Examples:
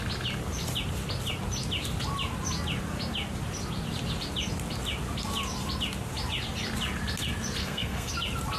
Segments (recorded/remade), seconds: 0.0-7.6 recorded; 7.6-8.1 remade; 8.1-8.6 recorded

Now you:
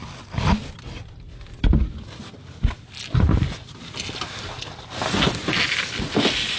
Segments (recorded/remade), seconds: 0.0-6.6 recorded

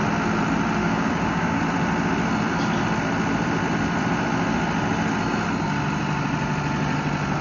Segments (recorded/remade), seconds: 0.0-0.8 recorded; 0.8-1.6 remade; 1.6-7.4 recorded

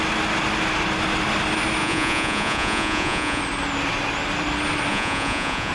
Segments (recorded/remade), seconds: 0.0-1.8 recorded; 1.8-3.4 remade; 3.4-4.9 recorded; 4.9-5.7 remade

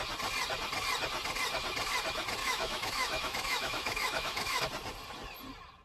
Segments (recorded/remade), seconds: 0.0-2.4 recorded; 2.4-4.6 remade; 4.6-5.8 recorded

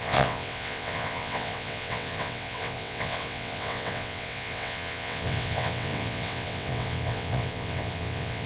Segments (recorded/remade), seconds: 0.0-8.5 remade

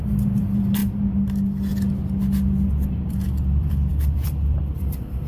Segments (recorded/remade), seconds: 0.0-0.8 remade; 0.8-3.0 recorded; 3.0-5.3 remade

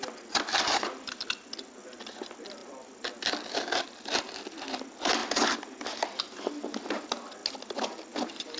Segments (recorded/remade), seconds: 0.0-8.6 recorded